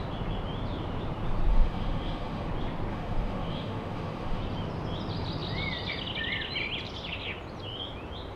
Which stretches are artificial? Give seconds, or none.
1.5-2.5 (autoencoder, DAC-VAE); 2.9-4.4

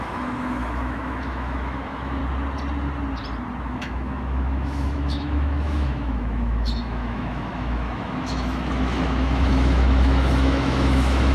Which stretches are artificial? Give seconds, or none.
0.0-2.2 (autoencoder, DAC-VAE); 3.6-11.3

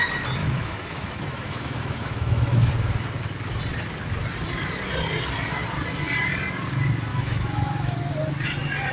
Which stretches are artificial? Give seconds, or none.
0.4-2.7 (autoencoder, DAC-VAE); 7.1-8.1

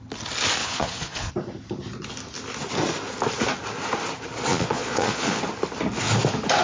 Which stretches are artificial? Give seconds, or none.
0.6-1.3 (vocoder, Vocos); 4.5-5.4